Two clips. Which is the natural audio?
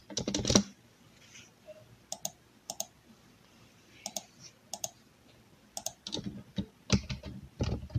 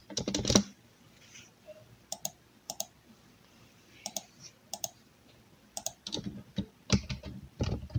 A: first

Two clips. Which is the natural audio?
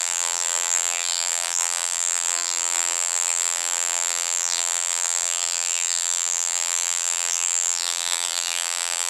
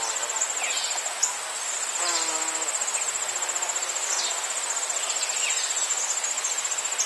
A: second